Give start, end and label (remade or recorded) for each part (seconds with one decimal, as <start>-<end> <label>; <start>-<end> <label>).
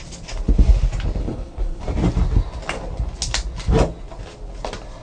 0.0-1.2 recorded; 1.2-1.8 remade; 1.8-5.0 recorded